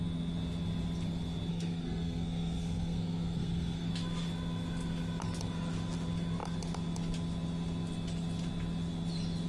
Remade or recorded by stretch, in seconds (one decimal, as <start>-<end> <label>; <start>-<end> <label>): 0.0-1.5 recorded; 1.5-3.9 remade; 3.9-9.5 recorded